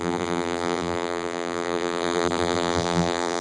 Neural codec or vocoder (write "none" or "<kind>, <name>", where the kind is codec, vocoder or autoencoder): vocoder, BigVGAN v2